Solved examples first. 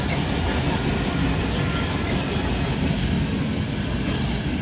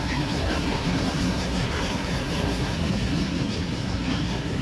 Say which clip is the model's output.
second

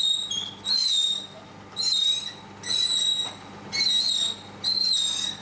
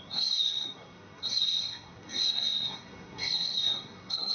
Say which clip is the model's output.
second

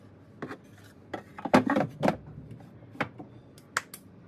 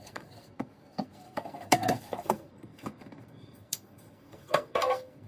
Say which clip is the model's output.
second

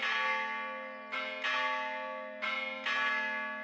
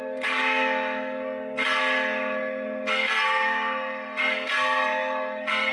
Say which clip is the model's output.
second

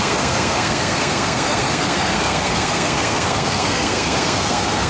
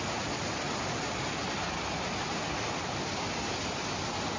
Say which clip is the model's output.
first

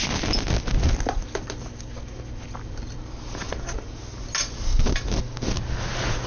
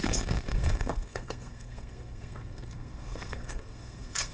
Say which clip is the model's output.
second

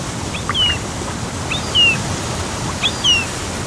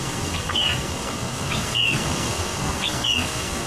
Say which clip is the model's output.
second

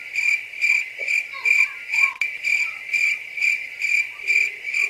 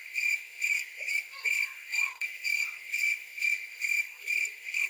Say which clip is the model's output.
second